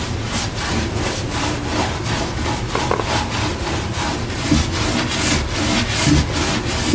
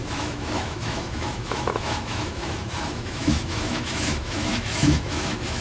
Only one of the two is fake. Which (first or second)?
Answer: second